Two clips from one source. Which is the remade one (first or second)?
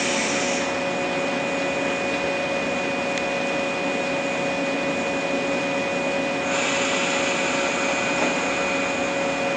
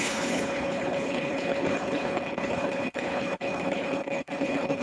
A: second